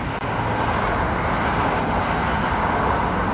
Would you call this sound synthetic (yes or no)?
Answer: no